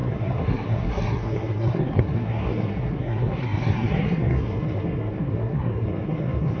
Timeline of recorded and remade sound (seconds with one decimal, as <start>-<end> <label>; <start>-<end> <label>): 0.0-6.6 remade